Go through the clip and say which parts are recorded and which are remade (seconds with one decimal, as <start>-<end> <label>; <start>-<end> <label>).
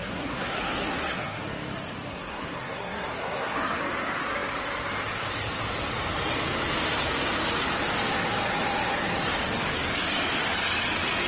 0.0-1.4 remade; 1.4-2.1 recorded; 2.1-3.8 remade; 3.8-11.3 recorded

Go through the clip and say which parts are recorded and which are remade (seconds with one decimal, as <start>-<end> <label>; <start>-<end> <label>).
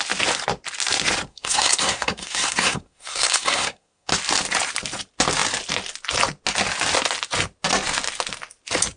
0.0-1.3 recorded; 1.3-4.1 remade; 4.1-9.0 recorded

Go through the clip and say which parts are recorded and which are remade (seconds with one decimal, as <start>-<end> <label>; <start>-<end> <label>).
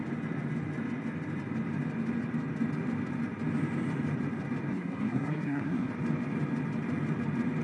0.0-4.7 recorded; 4.7-5.9 remade; 5.9-7.6 recorded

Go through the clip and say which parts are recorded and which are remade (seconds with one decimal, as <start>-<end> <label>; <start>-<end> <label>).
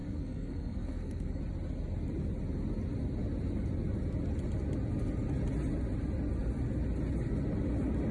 0.0-1.4 remade; 1.4-8.1 recorded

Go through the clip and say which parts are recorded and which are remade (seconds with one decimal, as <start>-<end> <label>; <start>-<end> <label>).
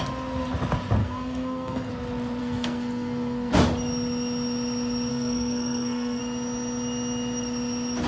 0.0-1.0 recorded; 1.0-1.9 remade; 1.9-2.4 recorded; 2.4-3.5 remade; 3.5-5.1 recorded; 5.1-6.2 remade; 6.2-8.1 recorded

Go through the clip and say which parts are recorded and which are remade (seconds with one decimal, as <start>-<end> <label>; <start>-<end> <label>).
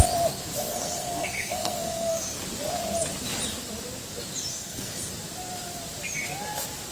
0.0-0.7 recorded; 0.7-2.4 remade; 2.4-4.5 recorded; 4.5-5.1 remade; 5.1-6.9 recorded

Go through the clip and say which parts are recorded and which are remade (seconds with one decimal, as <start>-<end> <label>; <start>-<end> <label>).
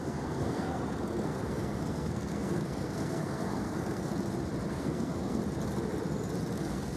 0.0-4.1 remade; 4.1-4.7 recorded; 4.7-5.4 remade; 5.4-6.6 recorded; 6.6-7.0 remade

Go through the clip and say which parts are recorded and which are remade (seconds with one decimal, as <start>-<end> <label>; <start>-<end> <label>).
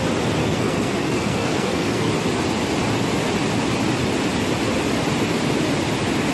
0.0-0.4 recorded; 0.4-2.1 remade; 2.1-6.3 recorded